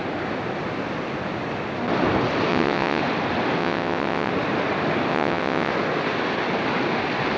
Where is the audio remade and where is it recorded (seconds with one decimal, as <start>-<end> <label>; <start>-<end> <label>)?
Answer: 0.0-2.5 recorded; 2.5-3.0 remade; 3.0-3.6 recorded; 3.6-4.3 remade; 4.3-5.1 recorded; 5.1-5.7 remade; 5.7-7.4 recorded